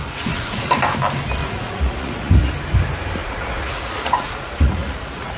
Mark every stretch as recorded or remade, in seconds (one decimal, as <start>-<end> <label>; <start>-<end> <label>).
0.0-0.7 remade; 0.7-1.4 recorded; 1.4-2.5 remade; 2.5-3.2 recorded; 3.2-5.4 remade